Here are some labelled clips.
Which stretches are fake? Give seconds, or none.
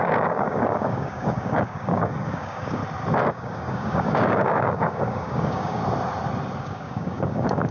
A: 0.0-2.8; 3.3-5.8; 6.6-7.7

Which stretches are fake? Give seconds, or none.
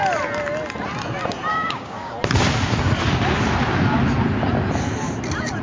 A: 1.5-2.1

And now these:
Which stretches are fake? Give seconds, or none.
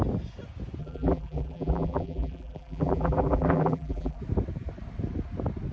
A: 0.8-4.2